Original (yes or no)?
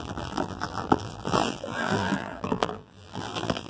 no